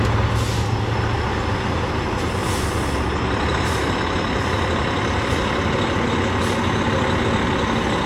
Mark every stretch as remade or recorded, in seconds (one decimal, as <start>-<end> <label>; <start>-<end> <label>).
0.0-8.1 recorded